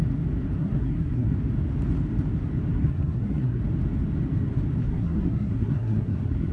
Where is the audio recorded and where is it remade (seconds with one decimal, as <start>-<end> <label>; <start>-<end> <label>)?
0.0-0.6 recorded; 0.6-1.3 remade; 1.3-2.7 recorded; 2.7-3.6 remade; 3.6-4.8 recorded; 4.8-6.5 remade